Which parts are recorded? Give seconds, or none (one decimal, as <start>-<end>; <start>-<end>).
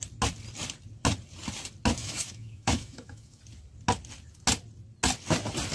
0.0-2.0; 3.4-5.7